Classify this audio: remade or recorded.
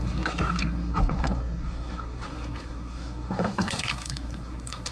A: remade